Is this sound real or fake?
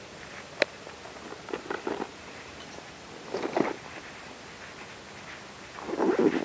real